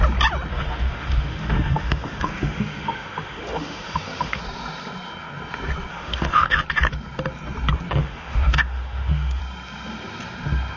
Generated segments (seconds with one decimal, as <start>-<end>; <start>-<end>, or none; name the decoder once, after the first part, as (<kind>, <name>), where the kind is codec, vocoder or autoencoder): 0.5-4.4 (autoencoder, DAC-VAE); 5.9-6.6; 8.0-9.4